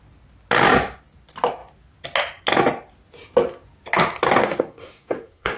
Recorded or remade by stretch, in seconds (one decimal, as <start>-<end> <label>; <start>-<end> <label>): 0.0-4.4 recorded; 4.4-5.6 remade